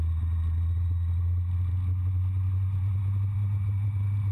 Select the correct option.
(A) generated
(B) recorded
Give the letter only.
B